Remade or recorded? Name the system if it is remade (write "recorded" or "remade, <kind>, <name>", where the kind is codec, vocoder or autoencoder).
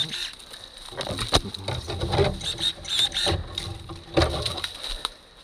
recorded